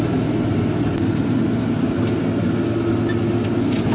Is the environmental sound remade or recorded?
recorded